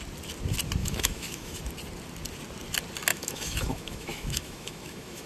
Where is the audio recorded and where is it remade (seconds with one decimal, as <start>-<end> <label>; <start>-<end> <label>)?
0.0-0.8 recorded; 0.8-1.6 remade; 1.6-3.1 recorded; 3.1-5.3 remade